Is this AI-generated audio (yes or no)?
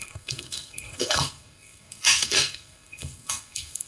yes